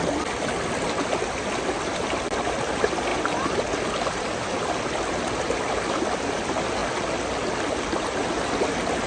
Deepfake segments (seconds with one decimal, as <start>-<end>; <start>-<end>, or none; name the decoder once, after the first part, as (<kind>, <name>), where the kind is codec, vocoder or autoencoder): none